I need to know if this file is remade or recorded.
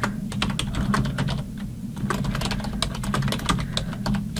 recorded